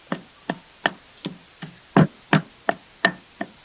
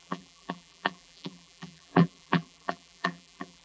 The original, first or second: first